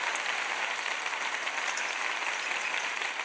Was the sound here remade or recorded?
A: recorded